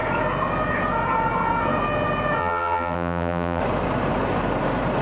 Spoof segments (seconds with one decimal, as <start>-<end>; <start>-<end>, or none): 2.4-3.6